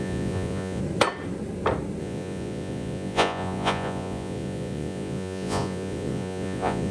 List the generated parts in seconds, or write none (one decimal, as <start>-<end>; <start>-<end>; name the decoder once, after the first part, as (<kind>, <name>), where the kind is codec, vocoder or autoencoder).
0.0-0.8 (vocoder, Vocos); 2.0-6.9